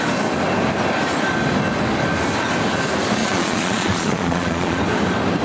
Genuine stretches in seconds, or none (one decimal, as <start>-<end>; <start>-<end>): 0.0-3.2; 4.8-5.4